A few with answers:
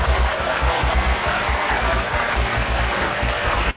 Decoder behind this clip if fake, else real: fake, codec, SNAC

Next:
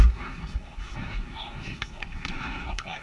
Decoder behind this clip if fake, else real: fake, codec, SNAC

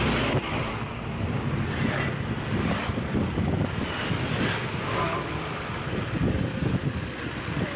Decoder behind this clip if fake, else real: real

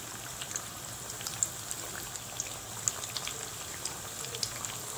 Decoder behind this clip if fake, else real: real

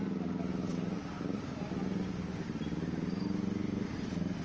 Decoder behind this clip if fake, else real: real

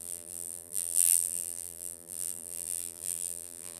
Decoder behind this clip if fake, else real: fake, vocoder, BigVGAN v2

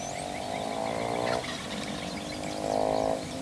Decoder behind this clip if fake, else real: real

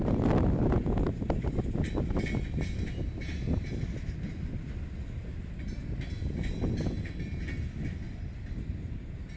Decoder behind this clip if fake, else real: real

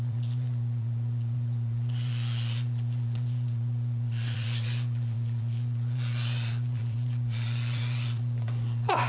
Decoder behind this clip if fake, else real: fake, vocoder, Vocos